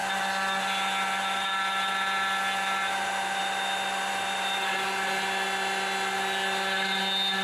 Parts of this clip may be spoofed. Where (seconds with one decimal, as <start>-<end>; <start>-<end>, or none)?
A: none

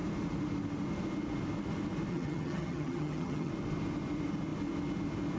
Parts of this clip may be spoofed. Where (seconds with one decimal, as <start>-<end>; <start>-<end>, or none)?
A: 2.1-3.5

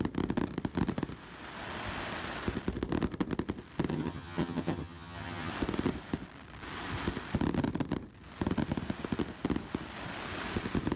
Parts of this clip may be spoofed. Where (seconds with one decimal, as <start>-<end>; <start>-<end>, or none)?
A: 3.9-5.5

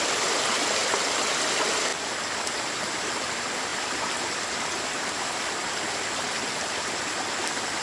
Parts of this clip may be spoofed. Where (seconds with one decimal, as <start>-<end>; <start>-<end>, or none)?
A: none

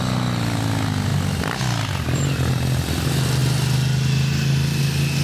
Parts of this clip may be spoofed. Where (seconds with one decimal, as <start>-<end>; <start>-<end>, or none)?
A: none

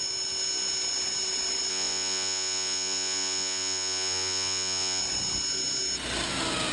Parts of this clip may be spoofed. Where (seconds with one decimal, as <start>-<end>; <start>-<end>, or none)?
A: 1.7-5.0

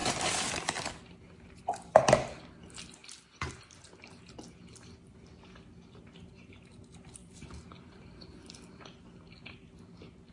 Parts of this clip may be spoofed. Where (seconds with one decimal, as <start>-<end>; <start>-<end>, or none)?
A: 0.0-1.6; 7.2-8.8

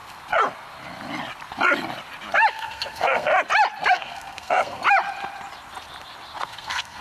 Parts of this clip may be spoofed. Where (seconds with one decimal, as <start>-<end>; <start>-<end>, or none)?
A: 2.5-3.3; 3.9-4.8; 6.4-7.0